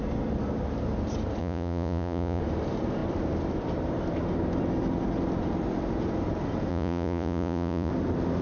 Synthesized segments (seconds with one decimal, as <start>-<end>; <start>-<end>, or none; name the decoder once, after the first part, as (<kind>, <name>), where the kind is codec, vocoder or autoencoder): 1.4-2.4 (vocoder, Vocos); 6.7-7.9